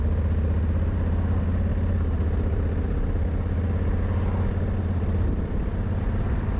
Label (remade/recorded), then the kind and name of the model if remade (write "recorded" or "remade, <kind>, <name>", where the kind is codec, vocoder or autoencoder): recorded